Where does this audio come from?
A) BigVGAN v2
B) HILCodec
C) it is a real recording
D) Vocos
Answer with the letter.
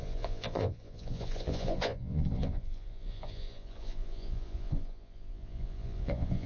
D